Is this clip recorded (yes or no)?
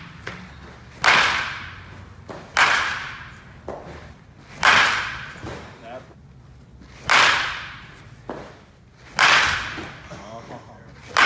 yes